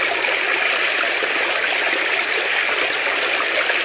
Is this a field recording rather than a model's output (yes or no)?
yes